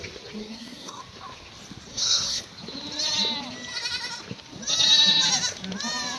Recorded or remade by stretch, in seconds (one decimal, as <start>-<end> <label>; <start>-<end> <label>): 0.0-0.4 recorded; 0.4-1.0 remade; 1.0-1.9 recorded; 1.9-2.4 remade; 2.4-6.2 recorded